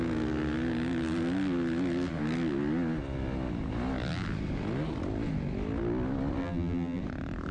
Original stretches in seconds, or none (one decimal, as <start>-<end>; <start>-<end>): 0.0-6.4; 7.0-7.5